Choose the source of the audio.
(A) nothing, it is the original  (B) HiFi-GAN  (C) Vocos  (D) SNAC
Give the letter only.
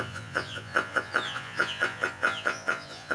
C